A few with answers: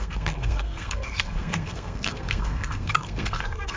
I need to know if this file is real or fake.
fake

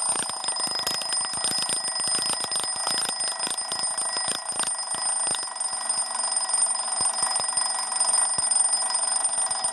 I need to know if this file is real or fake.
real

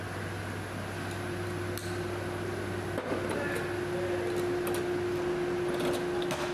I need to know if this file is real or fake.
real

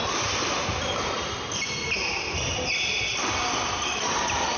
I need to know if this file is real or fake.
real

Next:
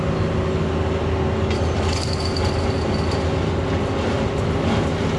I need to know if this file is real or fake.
real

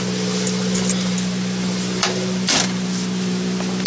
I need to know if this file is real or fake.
fake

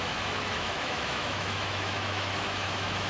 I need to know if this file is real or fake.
fake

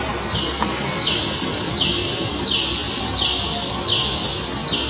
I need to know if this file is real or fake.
real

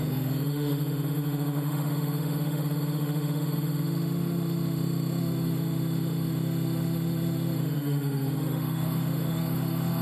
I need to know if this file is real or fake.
fake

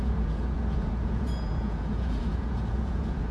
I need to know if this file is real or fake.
fake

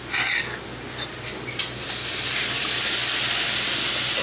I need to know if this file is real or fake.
real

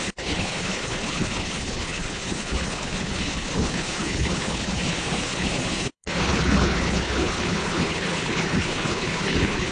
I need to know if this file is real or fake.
fake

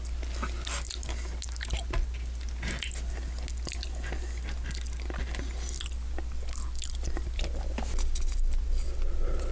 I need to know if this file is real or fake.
real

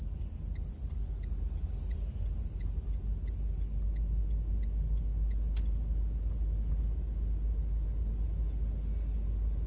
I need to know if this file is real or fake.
real